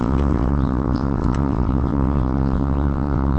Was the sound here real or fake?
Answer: fake